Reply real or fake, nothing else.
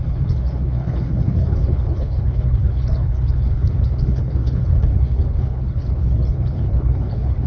fake